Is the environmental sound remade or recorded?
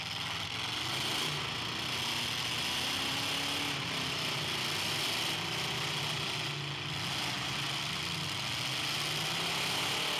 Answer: recorded